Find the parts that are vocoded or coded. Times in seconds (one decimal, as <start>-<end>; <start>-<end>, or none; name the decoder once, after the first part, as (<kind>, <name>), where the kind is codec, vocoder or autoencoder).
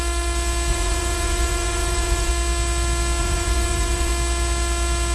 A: 0.7-2.3 (vocoder, Vocos); 3.2-4.1